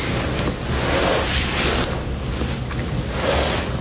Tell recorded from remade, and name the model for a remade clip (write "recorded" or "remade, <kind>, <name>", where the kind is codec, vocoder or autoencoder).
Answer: recorded